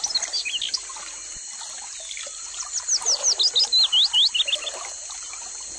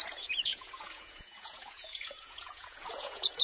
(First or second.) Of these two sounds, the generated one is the second